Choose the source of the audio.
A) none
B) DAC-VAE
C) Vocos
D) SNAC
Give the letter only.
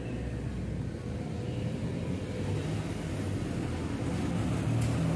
A